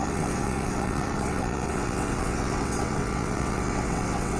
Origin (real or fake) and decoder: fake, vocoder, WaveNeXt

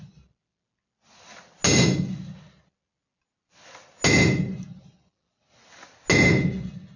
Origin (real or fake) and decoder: real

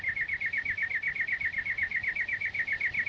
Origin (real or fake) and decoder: real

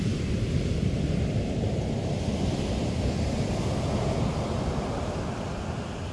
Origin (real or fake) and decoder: real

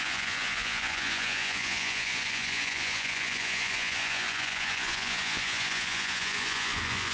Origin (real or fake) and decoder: fake, vocoder, Vocos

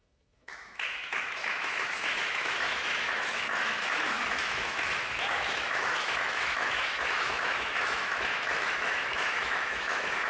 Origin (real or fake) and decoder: fake, autoencoder, DAC-VAE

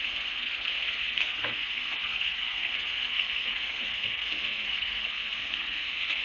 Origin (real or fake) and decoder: fake, codec, SNAC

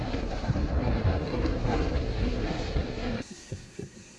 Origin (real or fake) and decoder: fake, codec, SNAC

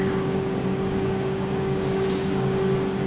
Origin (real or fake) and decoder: fake, codec, DAC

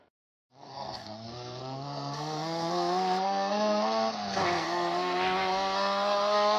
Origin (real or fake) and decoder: fake, codec, SNAC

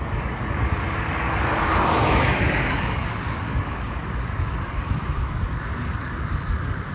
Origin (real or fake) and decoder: fake, codec, DAC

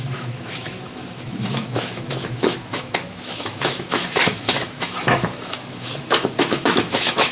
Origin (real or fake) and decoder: fake, autoencoder, DAC-VAE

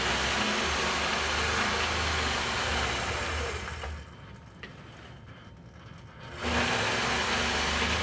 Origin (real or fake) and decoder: real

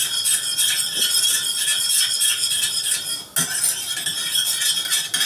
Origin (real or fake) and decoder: real